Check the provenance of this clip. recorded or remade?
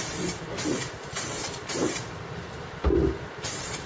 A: remade